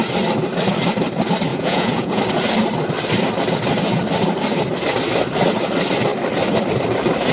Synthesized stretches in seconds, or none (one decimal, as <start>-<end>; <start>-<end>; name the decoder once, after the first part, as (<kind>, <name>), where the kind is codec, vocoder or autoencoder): 1.5-2.2 (vocoder, Vocos)